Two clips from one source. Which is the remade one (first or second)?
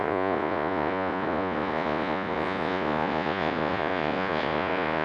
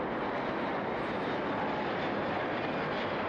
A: first